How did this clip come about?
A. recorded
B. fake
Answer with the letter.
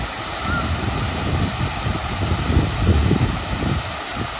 A